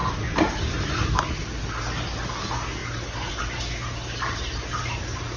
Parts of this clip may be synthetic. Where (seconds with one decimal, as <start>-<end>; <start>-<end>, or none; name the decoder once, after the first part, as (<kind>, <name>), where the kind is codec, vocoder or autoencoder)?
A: 0.0-0.9 (vocoder, BigVGAN v2)